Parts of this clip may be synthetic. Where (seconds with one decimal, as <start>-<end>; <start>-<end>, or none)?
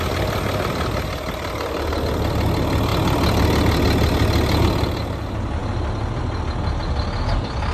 none